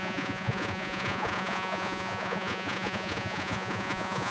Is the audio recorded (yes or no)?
no